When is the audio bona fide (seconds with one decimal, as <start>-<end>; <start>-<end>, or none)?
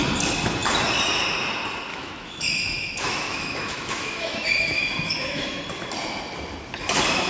0.0-1.9; 5.6-7.3